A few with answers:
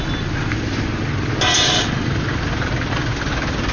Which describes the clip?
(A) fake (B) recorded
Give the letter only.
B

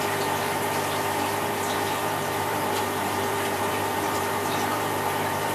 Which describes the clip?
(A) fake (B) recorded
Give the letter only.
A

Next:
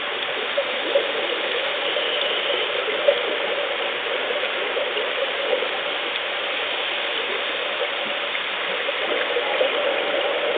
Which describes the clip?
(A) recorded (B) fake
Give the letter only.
A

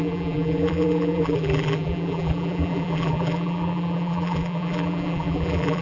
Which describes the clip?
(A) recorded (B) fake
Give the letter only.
B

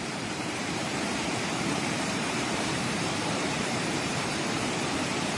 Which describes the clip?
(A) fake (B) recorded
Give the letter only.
A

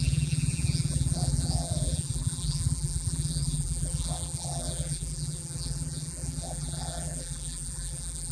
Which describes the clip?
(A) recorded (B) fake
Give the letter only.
B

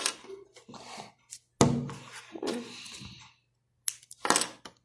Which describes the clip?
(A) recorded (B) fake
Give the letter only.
A